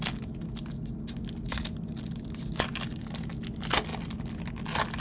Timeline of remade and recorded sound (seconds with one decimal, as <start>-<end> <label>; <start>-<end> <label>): 0.0-5.0 recorded